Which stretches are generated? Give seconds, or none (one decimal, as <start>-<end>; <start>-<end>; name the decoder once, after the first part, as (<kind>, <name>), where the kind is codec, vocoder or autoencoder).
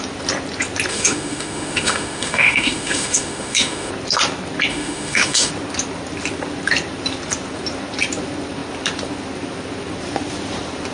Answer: 0.9-3.9 (autoencoder, DAC-VAE); 4.7-5.5